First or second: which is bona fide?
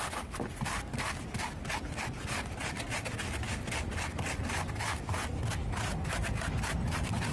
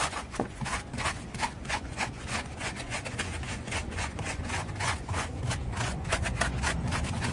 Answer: first